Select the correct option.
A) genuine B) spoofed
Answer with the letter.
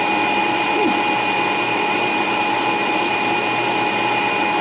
A